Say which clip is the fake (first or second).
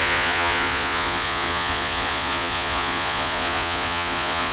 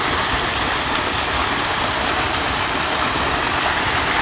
first